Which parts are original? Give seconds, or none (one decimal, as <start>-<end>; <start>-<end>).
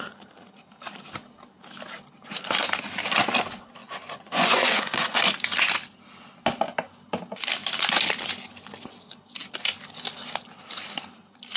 0.0-3.8; 5.2-11.6